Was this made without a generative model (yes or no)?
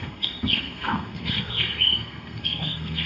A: no